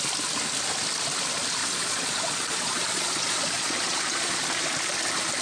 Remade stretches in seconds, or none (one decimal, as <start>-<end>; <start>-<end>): 1.6-4.4